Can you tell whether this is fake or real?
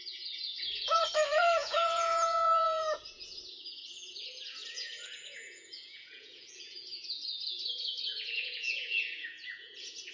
fake